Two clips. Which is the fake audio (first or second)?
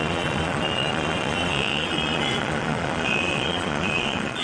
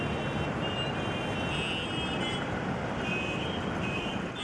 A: first